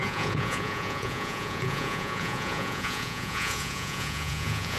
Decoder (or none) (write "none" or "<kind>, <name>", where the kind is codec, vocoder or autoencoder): vocoder, Vocos